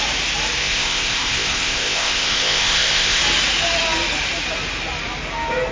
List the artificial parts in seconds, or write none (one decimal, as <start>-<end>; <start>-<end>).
0.6-3.2